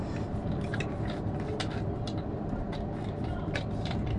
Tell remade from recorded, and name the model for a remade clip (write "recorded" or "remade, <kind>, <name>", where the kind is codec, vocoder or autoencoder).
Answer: remade, vocoder, BigVGAN v2